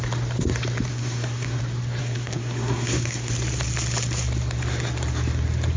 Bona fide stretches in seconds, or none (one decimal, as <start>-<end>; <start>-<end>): 0.0-0.9; 1.6-2.0; 3.3-5.8